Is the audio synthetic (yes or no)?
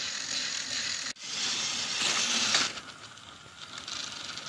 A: no